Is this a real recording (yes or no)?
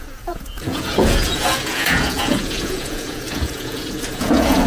no